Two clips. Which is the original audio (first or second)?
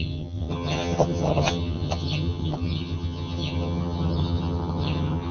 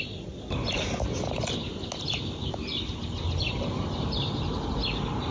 second